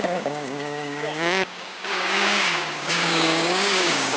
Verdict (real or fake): fake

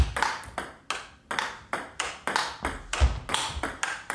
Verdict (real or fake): real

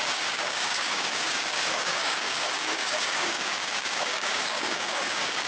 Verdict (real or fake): fake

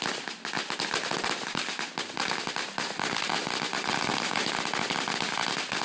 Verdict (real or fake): real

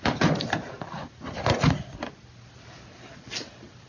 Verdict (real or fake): real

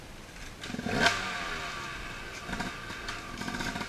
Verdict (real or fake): real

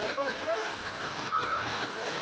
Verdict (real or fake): fake